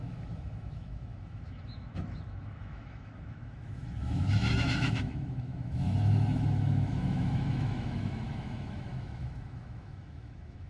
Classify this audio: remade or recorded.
remade